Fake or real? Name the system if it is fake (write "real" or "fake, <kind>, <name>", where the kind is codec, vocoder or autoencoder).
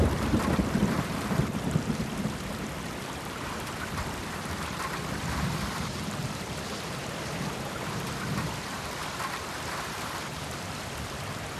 fake, vocoder, BigVGAN v2